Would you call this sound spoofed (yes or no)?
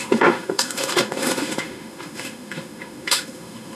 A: yes